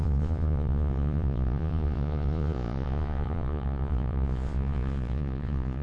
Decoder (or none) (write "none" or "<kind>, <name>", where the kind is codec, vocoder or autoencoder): vocoder, Vocos